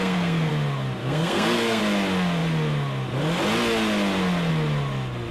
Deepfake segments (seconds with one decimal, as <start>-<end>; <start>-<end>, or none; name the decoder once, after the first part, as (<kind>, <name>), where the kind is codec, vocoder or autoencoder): 0.0-0.5 (codec, SNAC); 1.0-1.8